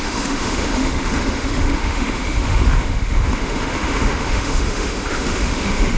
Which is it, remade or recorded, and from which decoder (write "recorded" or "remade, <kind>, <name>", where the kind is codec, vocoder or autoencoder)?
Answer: remade, autoencoder, DAC-VAE